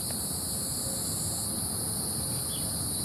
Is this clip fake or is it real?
real